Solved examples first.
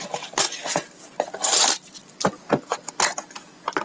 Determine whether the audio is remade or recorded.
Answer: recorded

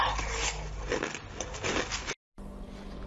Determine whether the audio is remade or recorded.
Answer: recorded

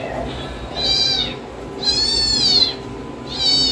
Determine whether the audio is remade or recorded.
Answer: recorded